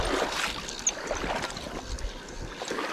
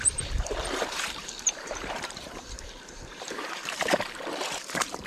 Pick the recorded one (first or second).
first